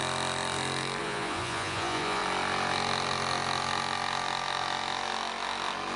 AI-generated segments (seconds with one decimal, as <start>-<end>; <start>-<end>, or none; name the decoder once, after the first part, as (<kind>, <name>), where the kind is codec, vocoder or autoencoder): 1.0-2.2 (vocoder, Vocos)